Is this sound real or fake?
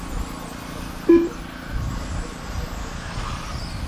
real